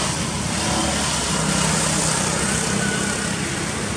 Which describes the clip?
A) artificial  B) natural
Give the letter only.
B